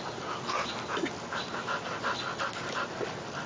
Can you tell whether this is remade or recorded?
recorded